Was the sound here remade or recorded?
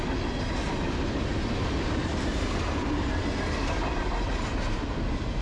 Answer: recorded